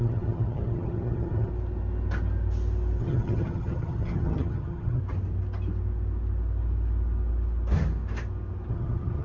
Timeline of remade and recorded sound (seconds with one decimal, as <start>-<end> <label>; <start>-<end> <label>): 0.0-1.5 remade; 1.5-3.0 recorded; 3.0-5.0 remade; 5.0-8.7 recorded; 8.7-9.2 remade